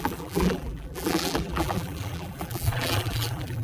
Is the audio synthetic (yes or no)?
yes